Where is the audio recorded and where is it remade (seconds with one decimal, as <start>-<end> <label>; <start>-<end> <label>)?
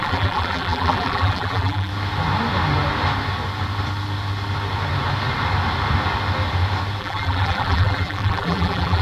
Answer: 0.0-1.9 remade; 1.9-7.0 recorded; 7.0-9.0 remade